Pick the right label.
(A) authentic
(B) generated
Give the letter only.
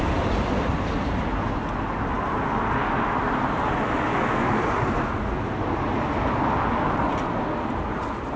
A